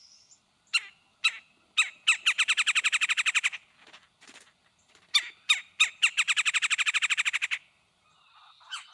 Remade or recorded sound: recorded